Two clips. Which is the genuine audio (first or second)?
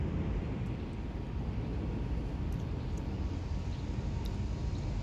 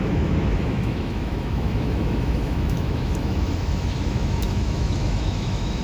first